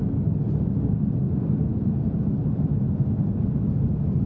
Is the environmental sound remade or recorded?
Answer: recorded